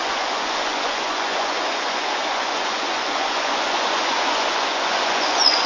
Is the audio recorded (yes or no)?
no